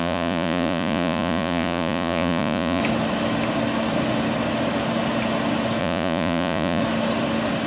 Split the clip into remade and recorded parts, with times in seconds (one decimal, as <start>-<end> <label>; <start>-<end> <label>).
0.0-2.8 remade; 2.8-5.8 recorded; 5.8-6.8 remade; 6.8-7.7 recorded